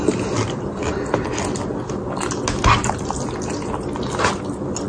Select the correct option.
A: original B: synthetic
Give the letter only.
A